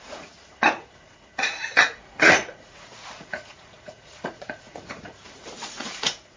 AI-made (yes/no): yes